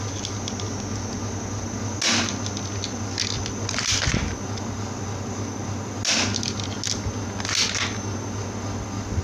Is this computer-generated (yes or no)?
no